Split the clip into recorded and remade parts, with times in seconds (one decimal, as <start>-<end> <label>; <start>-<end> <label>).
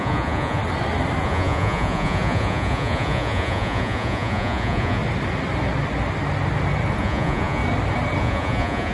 0.0-0.6 remade; 0.6-1.2 recorded; 1.2-5.0 remade; 5.0-7.0 recorded; 7.0-7.6 remade; 7.6-8.2 recorded; 8.2-8.9 remade